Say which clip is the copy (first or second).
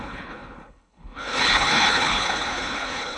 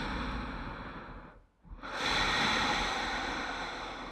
first